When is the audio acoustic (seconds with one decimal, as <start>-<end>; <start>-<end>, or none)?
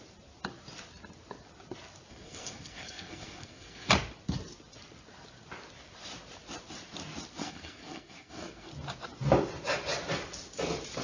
0.0-2.1; 3.9-7.4; 8.7-11.0